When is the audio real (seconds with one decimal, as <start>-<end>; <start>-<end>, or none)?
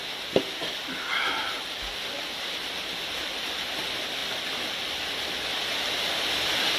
none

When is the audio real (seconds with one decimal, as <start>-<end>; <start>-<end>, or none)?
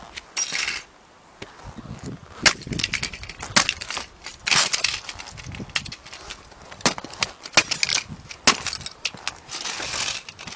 0.0-10.6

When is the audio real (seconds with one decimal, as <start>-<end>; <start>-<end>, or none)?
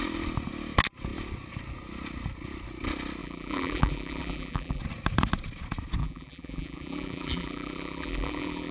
0.0-3.2; 4.8-6.0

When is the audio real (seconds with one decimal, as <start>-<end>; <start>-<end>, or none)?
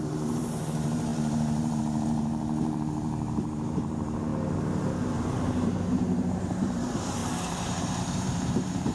4.3-5.8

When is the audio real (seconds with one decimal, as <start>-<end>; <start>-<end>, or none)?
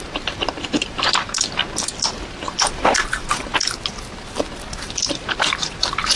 1.6-2.3; 3.5-5.1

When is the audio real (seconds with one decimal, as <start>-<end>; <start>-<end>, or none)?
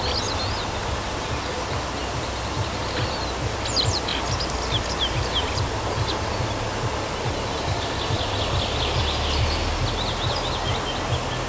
0.0-11.5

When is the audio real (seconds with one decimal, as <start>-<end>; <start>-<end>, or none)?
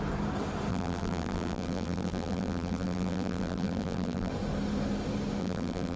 0.0-0.7; 4.3-5.4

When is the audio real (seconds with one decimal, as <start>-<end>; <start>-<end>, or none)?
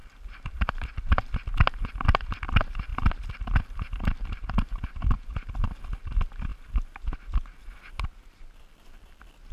0.7-2.9; 5.3-9.5